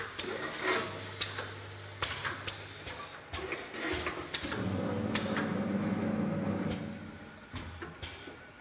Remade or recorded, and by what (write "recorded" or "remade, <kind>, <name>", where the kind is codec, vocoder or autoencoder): recorded